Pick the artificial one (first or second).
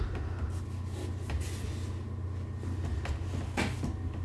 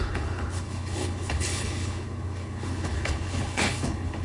second